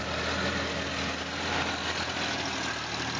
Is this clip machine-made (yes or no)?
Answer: no